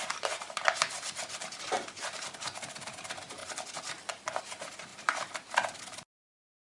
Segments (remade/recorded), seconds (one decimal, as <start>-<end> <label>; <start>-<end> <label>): 0.0-3.4 remade; 3.4-4.4 recorded; 4.4-6.7 remade